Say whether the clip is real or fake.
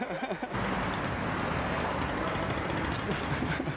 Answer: real